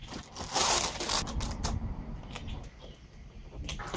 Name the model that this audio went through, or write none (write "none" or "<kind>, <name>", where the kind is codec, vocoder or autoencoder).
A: none